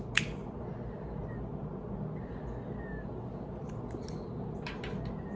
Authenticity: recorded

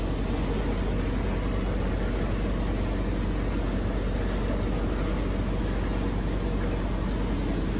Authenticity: recorded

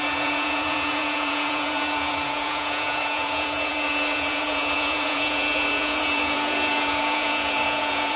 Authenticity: remade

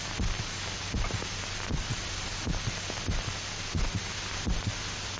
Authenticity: recorded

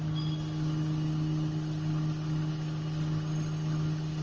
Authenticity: recorded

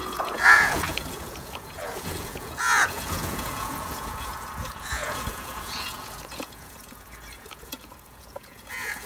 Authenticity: remade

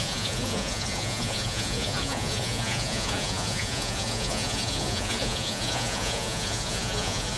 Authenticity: remade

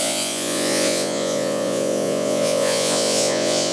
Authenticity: remade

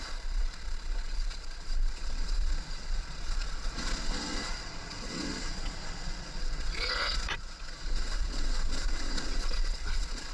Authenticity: remade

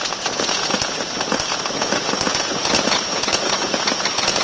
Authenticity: remade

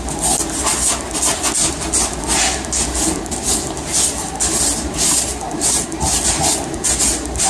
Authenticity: recorded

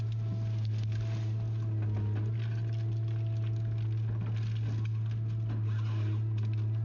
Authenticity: recorded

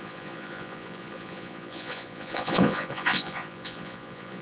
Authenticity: remade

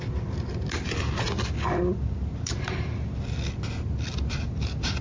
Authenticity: recorded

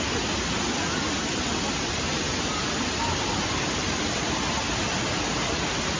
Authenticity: recorded